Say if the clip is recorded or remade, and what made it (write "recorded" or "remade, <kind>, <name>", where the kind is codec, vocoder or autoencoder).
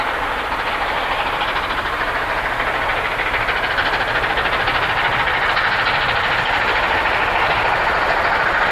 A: recorded